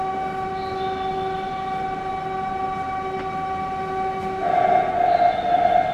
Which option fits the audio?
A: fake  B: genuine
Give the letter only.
B